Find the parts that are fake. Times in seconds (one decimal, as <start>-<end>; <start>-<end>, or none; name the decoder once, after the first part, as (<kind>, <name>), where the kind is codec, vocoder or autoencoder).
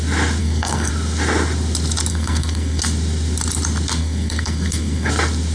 0.4-0.9 (codec, SNAC); 2.1-2.8; 4.0-5.1